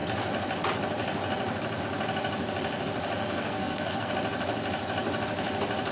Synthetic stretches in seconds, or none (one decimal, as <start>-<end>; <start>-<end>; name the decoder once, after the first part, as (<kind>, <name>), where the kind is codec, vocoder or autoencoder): 3.2-4.1 (codec, SNAC)